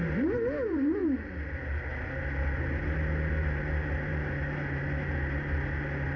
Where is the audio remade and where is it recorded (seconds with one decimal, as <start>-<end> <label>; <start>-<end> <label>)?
0.0-6.2 recorded